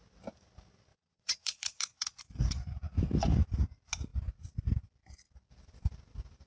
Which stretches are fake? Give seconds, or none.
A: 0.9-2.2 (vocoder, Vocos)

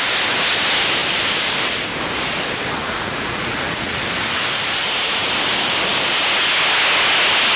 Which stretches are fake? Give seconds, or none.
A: 2.8-4.0 (vocoder, Vocos)

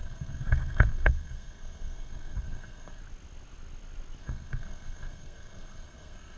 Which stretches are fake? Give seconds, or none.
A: 0.0-3.0 (codec, SNAC); 4.2-6.4

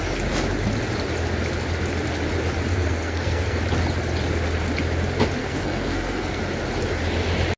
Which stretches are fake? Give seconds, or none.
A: 2.7-3.6 (codec, SNAC); 5.4-6.4

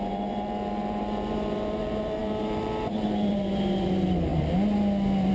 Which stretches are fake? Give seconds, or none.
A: 0.0-4.3 (vocoder, BigVGAN v2)

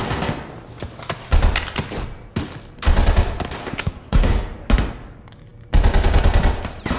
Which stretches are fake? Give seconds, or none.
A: 3.6-4.3 (codec, SNAC)